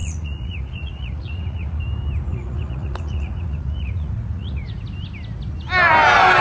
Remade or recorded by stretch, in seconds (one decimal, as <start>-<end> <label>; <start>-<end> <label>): 0.0-1.8 remade; 1.8-2.3 recorded; 2.3-4.7 remade; 4.7-6.4 recorded